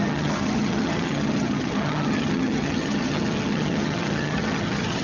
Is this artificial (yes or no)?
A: yes